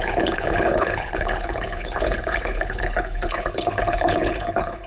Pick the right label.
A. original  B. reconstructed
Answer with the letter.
B